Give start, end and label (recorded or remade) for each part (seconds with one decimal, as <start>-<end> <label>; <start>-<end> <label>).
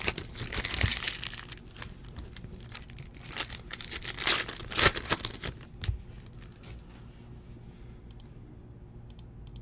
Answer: 0.0-9.6 recorded